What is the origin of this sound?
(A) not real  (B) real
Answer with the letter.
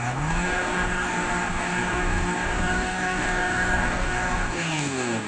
A